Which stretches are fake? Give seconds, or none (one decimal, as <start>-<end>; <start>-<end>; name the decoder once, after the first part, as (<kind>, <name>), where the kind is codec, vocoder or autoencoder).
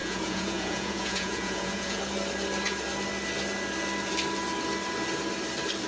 0.0-2.0 (vocoder, Vocos)